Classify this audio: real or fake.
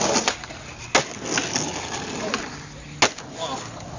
real